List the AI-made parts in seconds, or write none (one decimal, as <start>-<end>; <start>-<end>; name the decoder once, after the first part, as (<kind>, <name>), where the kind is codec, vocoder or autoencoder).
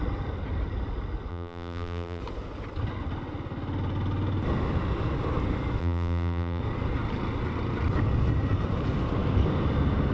1.3-2.2 (vocoder, BigVGAN v2); 5.8-6.6